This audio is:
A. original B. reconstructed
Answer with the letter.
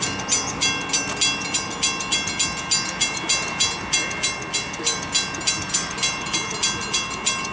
A